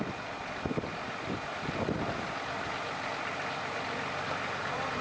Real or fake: real